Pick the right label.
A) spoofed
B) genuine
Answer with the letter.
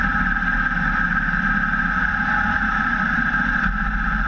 B